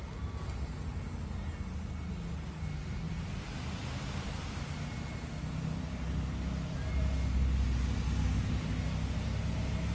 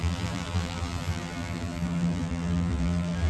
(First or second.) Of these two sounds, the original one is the first